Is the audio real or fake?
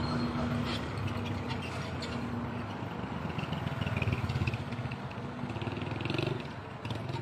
real